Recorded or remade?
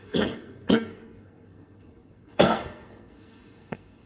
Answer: remade